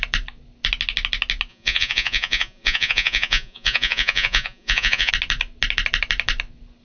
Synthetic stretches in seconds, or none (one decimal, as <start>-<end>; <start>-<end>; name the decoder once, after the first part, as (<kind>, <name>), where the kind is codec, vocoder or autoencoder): 1.5-5.1 (vocoder, Vocos)